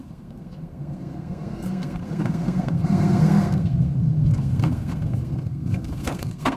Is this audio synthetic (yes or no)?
yes